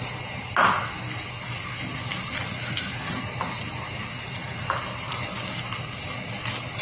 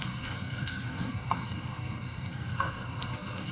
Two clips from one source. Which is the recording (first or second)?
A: first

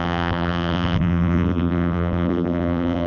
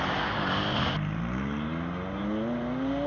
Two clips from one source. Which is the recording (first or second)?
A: second